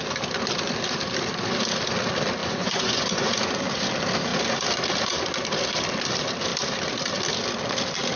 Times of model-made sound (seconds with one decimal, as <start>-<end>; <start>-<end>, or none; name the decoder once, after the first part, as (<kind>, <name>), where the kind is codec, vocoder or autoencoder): 2.4-3.6 (vocoder, Vocos)